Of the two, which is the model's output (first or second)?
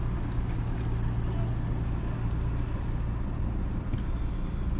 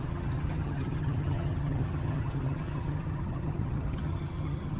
second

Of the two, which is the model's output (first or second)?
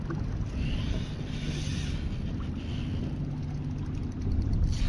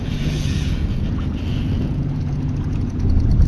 second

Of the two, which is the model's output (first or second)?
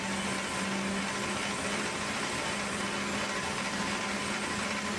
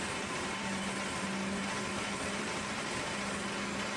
second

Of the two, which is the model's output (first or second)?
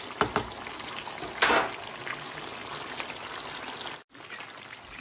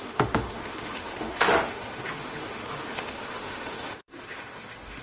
second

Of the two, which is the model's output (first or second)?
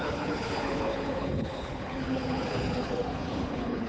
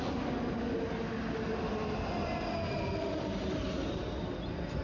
first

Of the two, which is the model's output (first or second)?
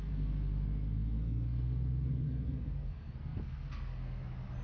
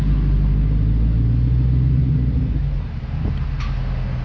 first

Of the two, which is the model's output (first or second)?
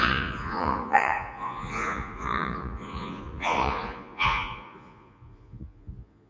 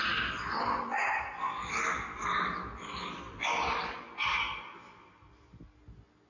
first